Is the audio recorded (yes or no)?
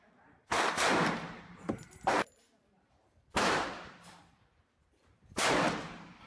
no